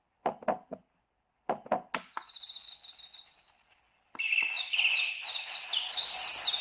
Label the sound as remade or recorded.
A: recorded